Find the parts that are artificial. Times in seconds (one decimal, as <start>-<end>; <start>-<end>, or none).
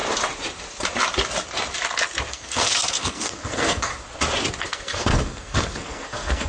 2.3-3.9; 4.6-6.5